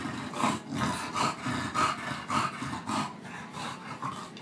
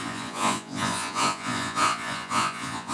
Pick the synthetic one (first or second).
second